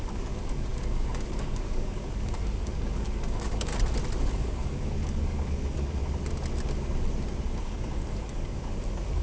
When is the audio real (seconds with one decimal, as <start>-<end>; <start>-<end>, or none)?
3.7-4.3; 6.0-7.6

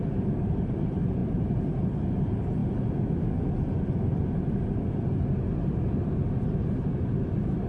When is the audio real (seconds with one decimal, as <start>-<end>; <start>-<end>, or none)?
2.6-6.4

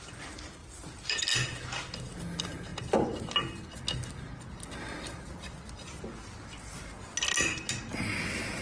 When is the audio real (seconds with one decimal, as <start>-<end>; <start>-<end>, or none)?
0.0-0.6; 1.2-8.6